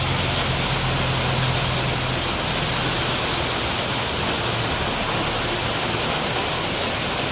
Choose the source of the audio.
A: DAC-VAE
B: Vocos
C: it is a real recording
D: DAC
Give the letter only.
C